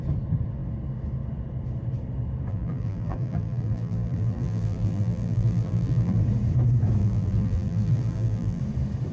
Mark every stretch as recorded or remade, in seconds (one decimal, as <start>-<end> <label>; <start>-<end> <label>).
0.0-2.5 recorded; 2.5-6.2 remade; 6.2-7.0 recorded; 7.0-8.6 remade; 8.6-9.1 recorded